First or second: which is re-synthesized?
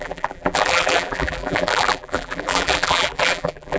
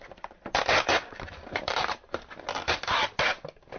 first